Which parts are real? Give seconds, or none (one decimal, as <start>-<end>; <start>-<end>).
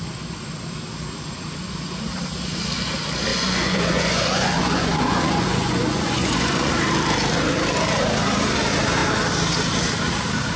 0.0-3.3; 6.7-10.6